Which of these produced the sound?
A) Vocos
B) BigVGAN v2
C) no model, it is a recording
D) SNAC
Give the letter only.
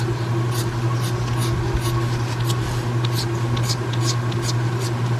C